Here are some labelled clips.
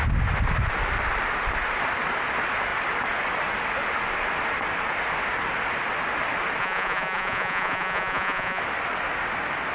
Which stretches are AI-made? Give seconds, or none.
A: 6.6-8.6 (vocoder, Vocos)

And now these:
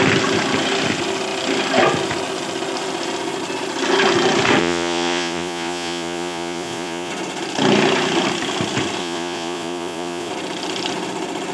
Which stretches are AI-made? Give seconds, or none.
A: 4.6-7.1 (vocoder, Vocos); 9.0-10.3

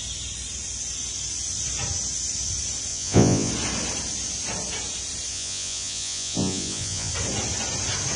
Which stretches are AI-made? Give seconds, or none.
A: 2.9-3.5 (vocoder, Vocos); 5.3-7.1

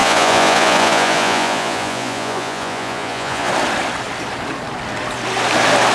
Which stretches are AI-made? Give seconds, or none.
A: 0.0-3.5 (vocoder, Vocos)

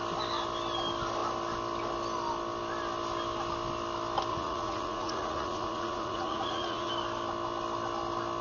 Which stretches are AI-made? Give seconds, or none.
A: 4.3-6.9 (vocoder, Vocos)

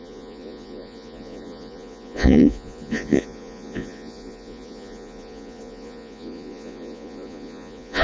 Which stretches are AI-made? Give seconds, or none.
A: 0.0-8.0 (vocoder, Vocos)

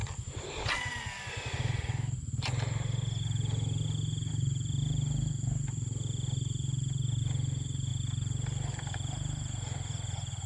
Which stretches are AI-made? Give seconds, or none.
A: none